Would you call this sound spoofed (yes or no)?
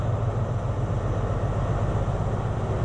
no